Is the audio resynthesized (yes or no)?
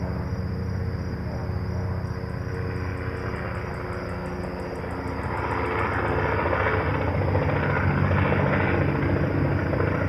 no